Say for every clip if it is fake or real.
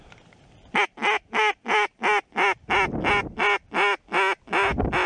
real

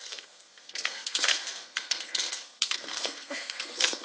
fake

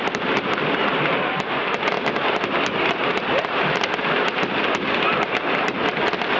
real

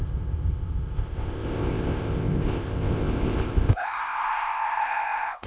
fake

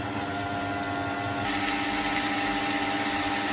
real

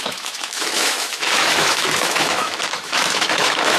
fake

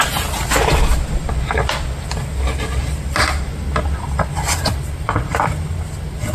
real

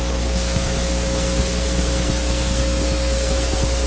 fake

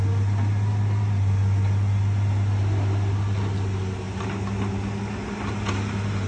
real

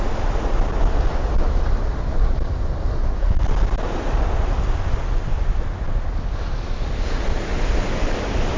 real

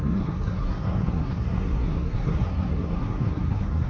fake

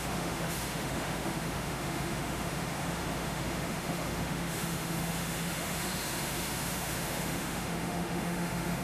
fake